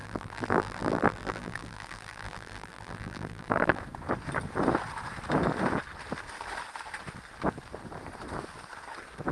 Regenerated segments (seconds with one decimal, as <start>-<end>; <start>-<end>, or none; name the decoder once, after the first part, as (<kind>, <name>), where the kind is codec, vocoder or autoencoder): 0.0-3.8 (vocoder, BigVGAN v2)

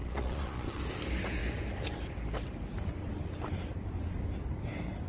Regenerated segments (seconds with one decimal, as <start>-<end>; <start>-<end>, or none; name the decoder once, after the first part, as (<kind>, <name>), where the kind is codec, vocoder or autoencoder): 0.0-0.8 (vocoder, Vocos)

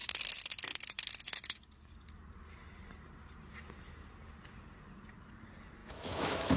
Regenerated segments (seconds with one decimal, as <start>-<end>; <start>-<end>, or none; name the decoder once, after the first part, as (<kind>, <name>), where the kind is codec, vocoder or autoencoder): 5.8-6.6 (autoencoder, DAC-VAE)

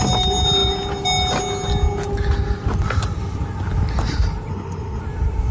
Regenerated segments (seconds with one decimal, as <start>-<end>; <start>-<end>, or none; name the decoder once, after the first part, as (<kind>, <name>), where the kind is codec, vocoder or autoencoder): 4.5-5.0 (autoencoder, DAC-VAE)